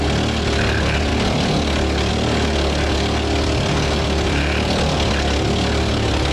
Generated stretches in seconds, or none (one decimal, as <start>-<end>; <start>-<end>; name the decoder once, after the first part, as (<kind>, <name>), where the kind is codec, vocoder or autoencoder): none